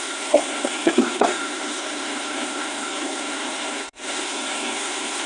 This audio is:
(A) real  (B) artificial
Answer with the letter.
B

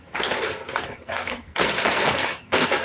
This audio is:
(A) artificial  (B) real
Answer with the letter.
A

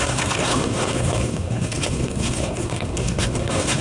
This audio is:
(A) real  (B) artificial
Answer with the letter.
B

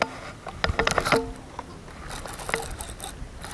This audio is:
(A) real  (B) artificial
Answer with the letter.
A